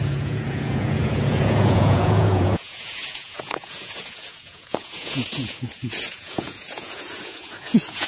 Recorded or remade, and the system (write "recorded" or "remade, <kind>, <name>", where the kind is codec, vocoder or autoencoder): remade, vocoder, Vocos